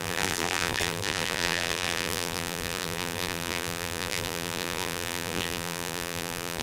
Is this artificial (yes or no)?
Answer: yes